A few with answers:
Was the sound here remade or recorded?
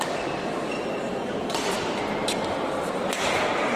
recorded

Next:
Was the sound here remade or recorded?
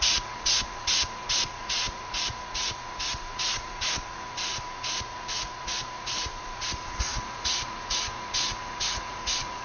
remade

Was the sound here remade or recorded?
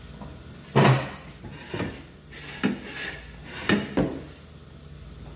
recorded